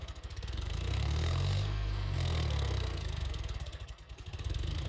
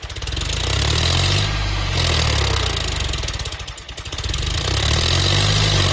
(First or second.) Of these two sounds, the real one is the second